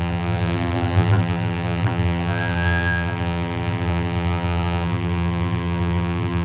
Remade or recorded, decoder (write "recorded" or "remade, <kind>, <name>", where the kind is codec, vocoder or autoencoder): remade, vocoder, BigVGAN v2